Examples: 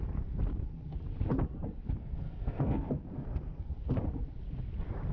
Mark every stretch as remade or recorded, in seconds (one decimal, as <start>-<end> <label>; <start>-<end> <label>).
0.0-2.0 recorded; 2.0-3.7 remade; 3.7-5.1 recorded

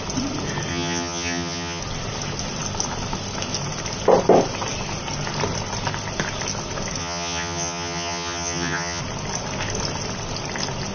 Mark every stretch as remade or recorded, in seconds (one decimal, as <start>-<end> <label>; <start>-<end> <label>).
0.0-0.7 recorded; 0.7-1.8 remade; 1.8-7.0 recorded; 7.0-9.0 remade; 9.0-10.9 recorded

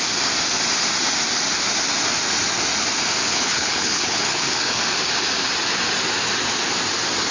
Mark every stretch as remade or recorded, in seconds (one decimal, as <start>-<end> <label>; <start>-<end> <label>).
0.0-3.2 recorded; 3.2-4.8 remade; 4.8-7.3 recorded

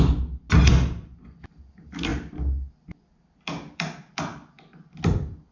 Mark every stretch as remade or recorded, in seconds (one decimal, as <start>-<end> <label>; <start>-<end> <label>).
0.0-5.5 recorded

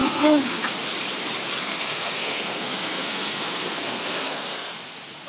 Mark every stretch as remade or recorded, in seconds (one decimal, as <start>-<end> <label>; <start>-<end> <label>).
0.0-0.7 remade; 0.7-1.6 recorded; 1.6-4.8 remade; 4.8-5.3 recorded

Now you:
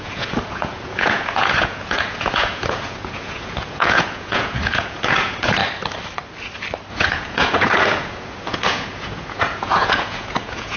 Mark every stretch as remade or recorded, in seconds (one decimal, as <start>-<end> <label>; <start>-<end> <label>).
0.0-5.6 remade; 5.6-6.9 recorded; 6.9-10.8 remade

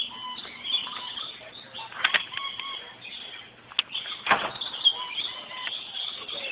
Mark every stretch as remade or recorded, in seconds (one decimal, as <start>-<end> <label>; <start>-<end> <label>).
0.0-6.5 recorded

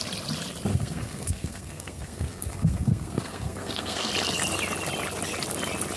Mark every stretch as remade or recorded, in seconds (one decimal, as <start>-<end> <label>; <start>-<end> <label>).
0.0-0.7 recorded; 0.7-4.1 remade; 4.1-6.0 recorded